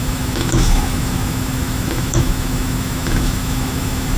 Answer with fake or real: fake